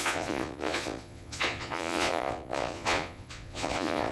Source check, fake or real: fake